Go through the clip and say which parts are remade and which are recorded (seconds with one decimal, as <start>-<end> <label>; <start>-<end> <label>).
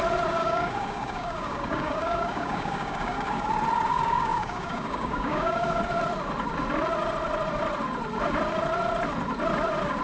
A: 0.0-0.4 recorded; 0.4-3.5 remade; 3.5-3.9 recorded; 3.9-5.8 remade; 5.8-10.0 recorded